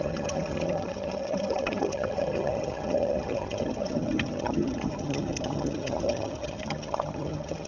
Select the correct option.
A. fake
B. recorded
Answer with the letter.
A